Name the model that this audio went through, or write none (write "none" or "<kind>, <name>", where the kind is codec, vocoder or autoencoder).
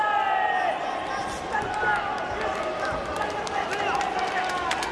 none